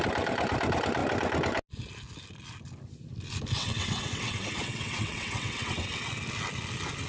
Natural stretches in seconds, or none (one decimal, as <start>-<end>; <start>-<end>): 0.0-3.6; 6.1-7.1